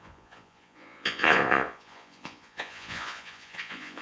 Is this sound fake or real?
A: fake